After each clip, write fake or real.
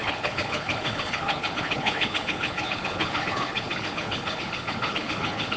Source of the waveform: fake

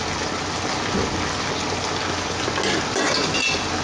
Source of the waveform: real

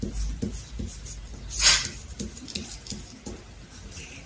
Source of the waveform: real